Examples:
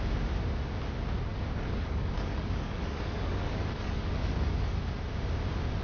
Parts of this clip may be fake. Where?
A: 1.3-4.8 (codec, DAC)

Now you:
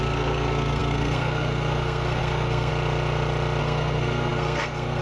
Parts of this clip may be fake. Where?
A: 0.0-2.7 (codec, SNAC); 3.6-5.0

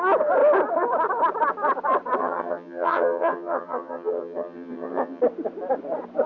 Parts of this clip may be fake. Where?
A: 2.2-5.2 (vocoder, HiFi-GAN)

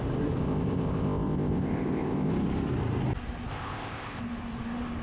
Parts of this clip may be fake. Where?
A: 0.4-2.3 (codec, ZipCodec); 3.5-4.2